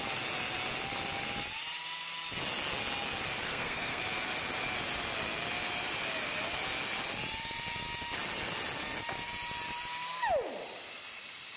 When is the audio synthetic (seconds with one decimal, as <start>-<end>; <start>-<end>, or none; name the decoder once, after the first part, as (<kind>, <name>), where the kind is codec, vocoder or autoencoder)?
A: 3.4-4.0 (codec, SNAC)